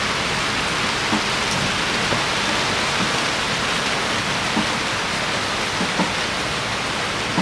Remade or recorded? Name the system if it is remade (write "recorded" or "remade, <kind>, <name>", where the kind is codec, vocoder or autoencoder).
recorded